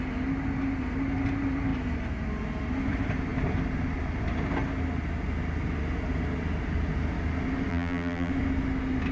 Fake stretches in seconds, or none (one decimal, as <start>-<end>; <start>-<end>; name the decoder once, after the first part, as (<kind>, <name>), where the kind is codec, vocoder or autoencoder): 7.7-8.3 (vocoder, BigVGAN v2)